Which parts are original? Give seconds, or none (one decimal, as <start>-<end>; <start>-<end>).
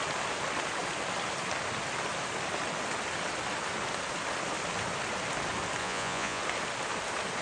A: 0.0-5.8; 6.4-7.4